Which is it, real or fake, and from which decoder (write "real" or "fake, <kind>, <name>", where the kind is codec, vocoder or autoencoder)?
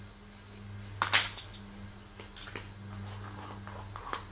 real